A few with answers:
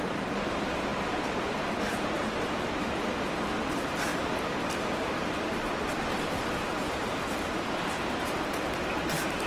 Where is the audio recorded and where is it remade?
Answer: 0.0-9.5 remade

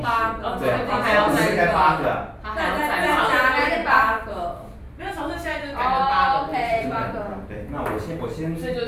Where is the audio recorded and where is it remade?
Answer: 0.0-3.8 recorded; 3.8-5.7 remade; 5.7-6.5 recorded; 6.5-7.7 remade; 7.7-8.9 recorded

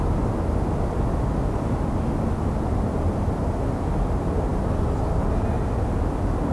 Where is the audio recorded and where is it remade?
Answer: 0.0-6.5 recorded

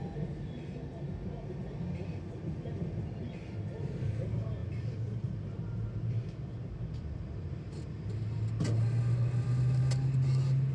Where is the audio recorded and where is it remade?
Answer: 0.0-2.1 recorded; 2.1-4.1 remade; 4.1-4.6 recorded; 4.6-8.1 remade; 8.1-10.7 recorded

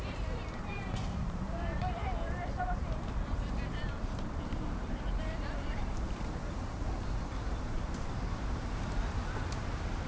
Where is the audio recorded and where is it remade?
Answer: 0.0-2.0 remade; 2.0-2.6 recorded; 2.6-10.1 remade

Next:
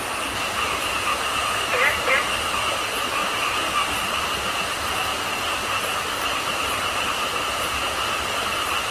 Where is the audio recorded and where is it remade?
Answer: 0.0-8.9 recorded

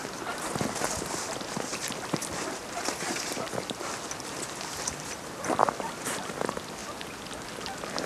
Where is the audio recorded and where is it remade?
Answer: 0.0-8.1 recorded

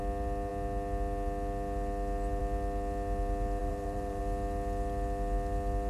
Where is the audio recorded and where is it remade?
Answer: 0.0-3.6 recorded; 3.6-4.2 remade; 4.2-5.9 recorded